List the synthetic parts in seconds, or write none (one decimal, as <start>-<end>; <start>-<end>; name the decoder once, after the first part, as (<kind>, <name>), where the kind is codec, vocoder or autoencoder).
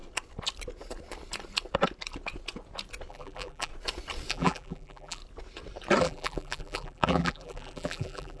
3.1-3.7 (vocoder, BigVGAN v2); 4.3-5.2; 6.0-8.4